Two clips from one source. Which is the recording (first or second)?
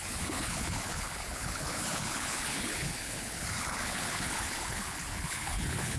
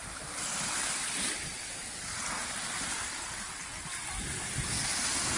second